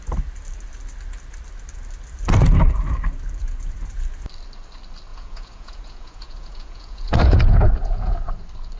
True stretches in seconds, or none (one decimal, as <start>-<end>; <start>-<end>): 0.0-5.1; 8.3-8.8